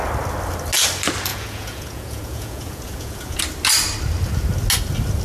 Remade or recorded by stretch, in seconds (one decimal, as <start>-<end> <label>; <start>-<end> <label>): 0.0-1.3 recorded; 1.3-3.4 remade; 3.4-5.2 recorded